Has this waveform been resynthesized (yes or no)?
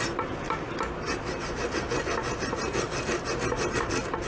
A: no